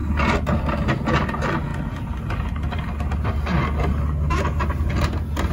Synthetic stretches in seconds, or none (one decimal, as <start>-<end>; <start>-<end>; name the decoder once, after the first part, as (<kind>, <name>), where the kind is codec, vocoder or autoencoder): none

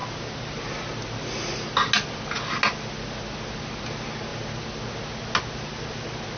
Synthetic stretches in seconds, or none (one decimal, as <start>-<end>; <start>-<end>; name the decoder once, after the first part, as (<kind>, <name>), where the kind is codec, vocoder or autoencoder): none

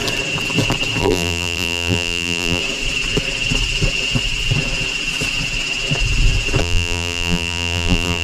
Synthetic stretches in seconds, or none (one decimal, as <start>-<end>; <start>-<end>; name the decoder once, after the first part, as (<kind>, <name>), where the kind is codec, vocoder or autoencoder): 1.0-2.6 (vocoder, BigVGAN v2); 6.6-8.2

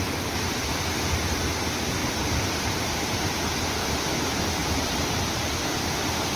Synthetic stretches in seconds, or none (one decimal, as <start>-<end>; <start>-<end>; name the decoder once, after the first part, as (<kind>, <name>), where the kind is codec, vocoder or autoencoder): 2.0-3.2 (vocoder, BigVGAN v2); 4.6-5.4

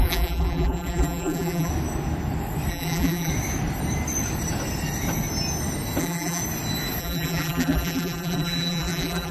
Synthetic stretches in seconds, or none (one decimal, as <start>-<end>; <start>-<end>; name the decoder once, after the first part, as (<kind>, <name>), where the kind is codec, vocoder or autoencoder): 0.0-1.7 (vocoder, BigVGAN v2); 2.7-3.3; 6.0-6.4; 7.0-9.3

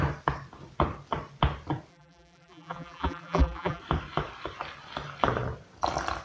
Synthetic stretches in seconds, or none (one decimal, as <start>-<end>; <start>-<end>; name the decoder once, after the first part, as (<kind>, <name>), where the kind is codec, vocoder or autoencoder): 1.9-3.8 (vocoder, BigVGAN v2)

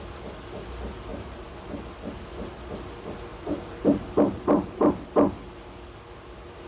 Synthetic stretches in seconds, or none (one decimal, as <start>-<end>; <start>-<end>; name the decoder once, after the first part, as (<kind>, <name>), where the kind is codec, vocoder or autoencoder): 1.1-1.6 (vocoder, BigVGAN v2); 3.3-4.9

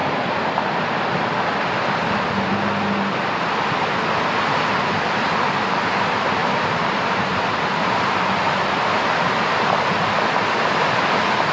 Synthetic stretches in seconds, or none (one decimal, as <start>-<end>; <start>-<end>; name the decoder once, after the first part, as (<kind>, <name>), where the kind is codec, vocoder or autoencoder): 6.4-8.6 (vocoder, BigVGAN v2)